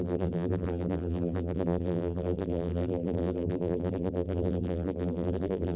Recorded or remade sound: remade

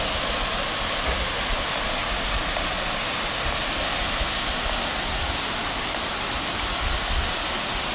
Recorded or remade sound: recorded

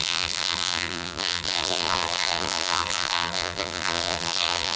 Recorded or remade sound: remade